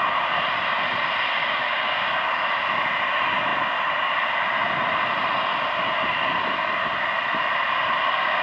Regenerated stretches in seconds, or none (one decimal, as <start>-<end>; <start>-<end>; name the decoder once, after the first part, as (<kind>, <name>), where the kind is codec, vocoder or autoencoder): 1.4-2.5 (codec, DAC)